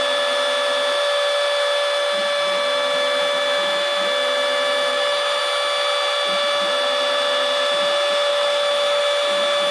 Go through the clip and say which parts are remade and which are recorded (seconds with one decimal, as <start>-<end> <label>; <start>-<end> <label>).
0.0-4.9 recorded; 4.9-5.4 remade; 5.4-8.3 recorded; 8.3-9.0 remade; 9.0-9.7 recorded